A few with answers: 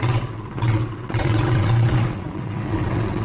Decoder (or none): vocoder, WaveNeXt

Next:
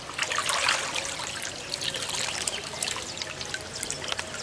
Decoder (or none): none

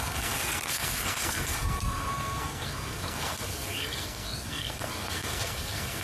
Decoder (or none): codec, SNAC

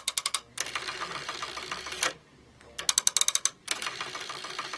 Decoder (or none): none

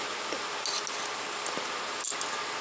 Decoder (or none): none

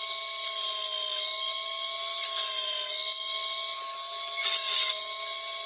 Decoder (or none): none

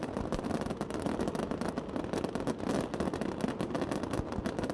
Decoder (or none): none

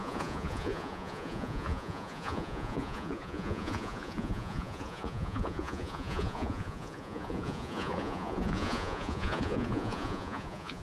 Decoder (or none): vocoder, Vocos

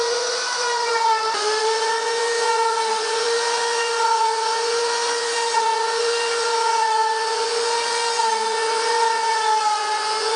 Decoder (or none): vocoder, Vocos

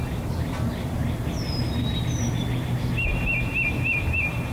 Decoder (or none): none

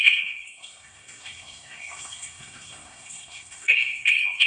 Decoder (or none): codec, SNAC